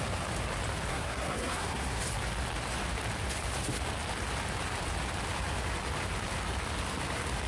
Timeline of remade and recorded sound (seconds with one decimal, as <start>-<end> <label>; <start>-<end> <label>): 0.0-0.9 recorded; 0.9-2.0 remade; 2.0-7.5 recorded